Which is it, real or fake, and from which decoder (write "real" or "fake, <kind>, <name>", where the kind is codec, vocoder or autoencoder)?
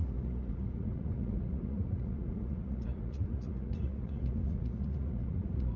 fake, vocoder, Vocos